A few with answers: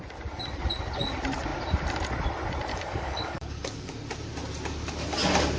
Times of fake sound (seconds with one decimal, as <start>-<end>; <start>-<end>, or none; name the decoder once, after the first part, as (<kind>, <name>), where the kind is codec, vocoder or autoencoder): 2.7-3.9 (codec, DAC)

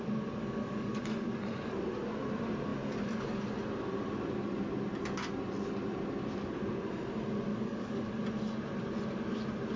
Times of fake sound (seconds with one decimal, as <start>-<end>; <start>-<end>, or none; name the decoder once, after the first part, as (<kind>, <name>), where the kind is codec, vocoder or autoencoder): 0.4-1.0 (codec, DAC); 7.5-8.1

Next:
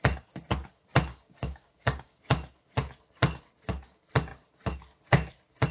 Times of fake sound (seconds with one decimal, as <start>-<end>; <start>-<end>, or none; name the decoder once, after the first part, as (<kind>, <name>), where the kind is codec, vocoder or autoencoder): 1.1-2.2 (codec, DAC)

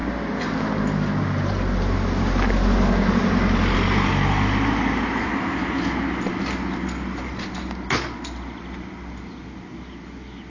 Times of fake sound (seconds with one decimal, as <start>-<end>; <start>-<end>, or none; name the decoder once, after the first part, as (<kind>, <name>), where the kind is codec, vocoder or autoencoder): none

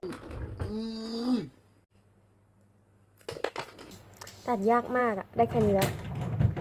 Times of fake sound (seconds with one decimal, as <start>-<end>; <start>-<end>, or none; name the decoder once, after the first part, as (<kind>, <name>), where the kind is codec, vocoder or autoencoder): none